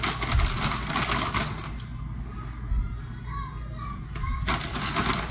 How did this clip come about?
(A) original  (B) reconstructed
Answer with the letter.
A